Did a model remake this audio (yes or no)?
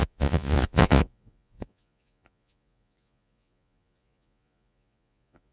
yes